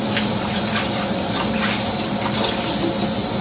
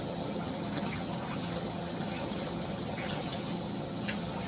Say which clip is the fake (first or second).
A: second